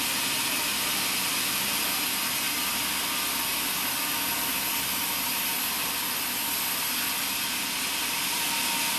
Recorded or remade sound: recorded